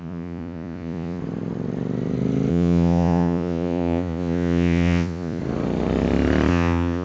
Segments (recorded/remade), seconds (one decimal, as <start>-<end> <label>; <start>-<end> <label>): 0.0-1.2 remade; 1.2-2.5 recorded; 2.5-5.4 remade; 5.4-6.5 recorded; 6.5-7.0 remade